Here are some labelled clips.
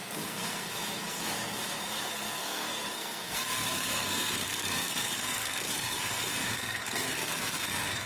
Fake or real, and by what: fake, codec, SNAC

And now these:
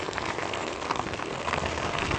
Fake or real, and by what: fake, codec, SNAC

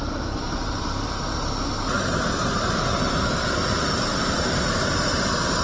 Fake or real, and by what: fake, vocoder, BigVGAN v2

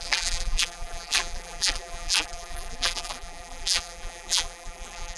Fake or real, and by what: fake, vocoder, BigVGAN v2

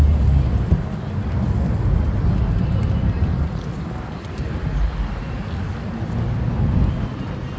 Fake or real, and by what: real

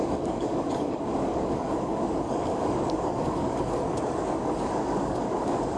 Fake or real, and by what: fake, codec, DAC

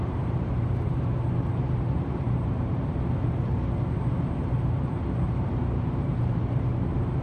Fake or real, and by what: fake, vocoder, BigVGAN v2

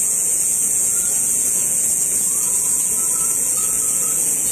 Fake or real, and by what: fake, vocoder, Vocos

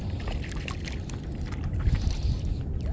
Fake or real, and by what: real